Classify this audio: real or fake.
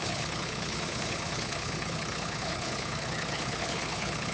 fake